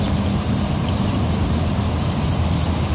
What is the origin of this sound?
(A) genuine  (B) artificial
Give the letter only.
A